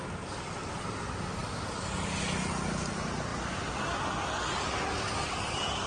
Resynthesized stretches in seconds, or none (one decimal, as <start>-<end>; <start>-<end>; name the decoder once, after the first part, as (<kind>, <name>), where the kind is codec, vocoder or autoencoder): none

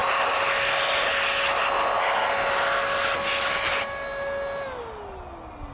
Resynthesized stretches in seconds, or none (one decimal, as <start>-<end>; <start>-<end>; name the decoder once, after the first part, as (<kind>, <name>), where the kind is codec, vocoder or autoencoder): none

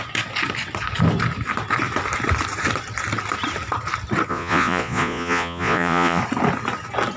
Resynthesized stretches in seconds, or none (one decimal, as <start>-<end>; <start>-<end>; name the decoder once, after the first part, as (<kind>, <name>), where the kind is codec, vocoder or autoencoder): 4.3-6.2 (vocoder, Vocos)

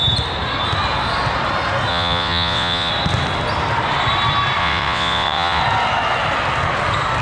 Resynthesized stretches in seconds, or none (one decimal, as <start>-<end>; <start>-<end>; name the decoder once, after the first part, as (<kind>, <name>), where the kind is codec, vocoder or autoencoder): 1.9-2.9 (vocoder, WaveNeXt); 4.6-5.6

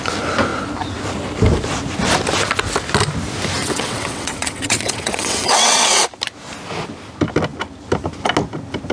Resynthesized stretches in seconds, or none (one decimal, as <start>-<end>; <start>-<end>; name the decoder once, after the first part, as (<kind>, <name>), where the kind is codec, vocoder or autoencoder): 3.6-6.0 (vocoder, WaveNeXt)

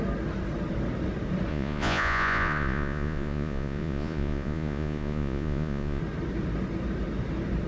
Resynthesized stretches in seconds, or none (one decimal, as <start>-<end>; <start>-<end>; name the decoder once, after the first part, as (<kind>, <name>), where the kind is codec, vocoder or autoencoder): 1.5-6.0 (vocoder, Vocos)

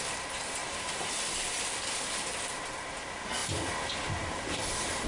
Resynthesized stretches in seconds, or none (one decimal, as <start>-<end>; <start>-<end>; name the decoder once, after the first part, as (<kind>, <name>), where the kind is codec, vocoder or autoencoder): 0.6-1.6 (vocoder, BigVGAN v2)

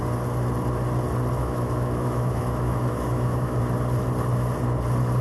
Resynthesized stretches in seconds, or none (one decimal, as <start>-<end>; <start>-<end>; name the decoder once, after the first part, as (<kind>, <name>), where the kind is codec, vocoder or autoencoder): 1.4-3.6 (autoencoder, DAC-VAE)